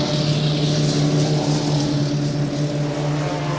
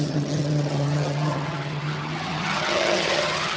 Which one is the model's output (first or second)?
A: second